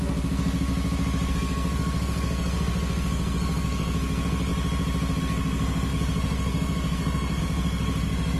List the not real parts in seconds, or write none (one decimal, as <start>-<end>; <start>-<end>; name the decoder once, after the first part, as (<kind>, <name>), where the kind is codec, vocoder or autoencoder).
0.0-0.7 (codec, SNAC); 1.3-4.5; 5.2-8.4